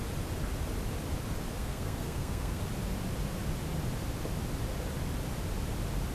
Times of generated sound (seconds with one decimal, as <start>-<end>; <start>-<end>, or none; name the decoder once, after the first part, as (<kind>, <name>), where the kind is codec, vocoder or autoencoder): 1.6-2.6 (codec, SNAC)